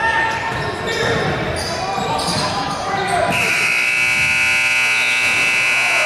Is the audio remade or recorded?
recorded